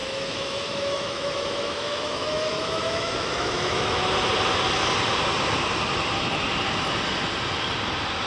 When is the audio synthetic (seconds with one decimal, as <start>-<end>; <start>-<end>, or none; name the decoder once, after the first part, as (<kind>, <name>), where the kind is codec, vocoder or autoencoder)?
0.0-4.0 (autoencoder, DAC-VAE)